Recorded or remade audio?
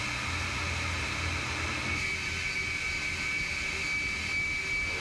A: recorded